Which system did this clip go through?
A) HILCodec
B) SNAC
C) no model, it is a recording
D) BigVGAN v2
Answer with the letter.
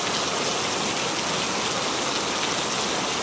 C